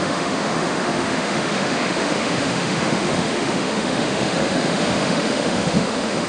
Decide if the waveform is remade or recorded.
remade